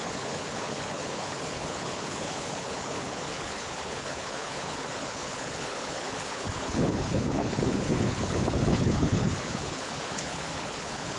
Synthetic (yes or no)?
yes